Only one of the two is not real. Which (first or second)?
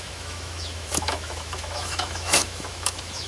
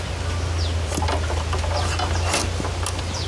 first